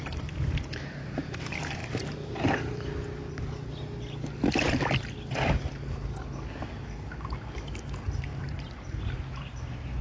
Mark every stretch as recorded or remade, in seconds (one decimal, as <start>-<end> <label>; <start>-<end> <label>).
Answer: 0.0-1.8 remade; 1.8-6.6 recorded; 6.6-10.0 remade